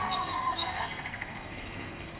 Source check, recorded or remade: remade